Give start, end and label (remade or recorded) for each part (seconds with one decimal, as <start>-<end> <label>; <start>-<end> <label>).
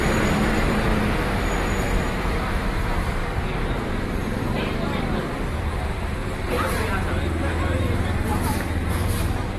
0.0-0.9 remade; 0.9-1.8 recorded; 1.8-6.2 remade; 6.2-8.9 recorded; 8.9-9.6 remade